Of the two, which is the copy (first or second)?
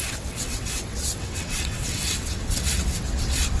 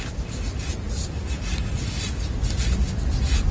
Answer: first